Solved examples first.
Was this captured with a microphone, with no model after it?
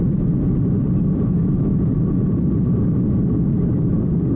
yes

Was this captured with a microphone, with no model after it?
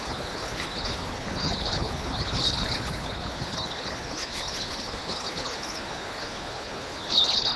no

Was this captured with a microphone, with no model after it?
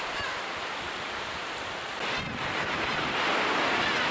yes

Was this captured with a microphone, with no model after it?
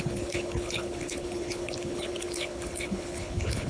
no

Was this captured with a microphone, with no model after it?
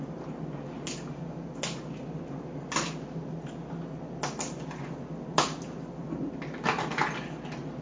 yes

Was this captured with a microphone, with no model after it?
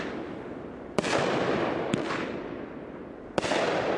yes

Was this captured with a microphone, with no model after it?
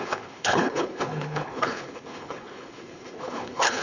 no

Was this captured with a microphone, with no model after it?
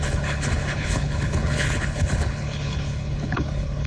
no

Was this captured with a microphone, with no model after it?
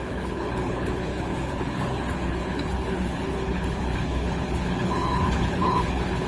no